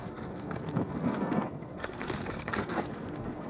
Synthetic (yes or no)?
yes